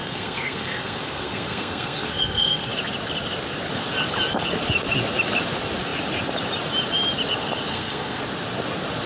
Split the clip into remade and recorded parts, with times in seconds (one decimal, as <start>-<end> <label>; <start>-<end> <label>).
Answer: 0.0-2.7 remade; 2.7-7.7 recorded; 7.7-8.2 remade; 8.2-9.1 recorded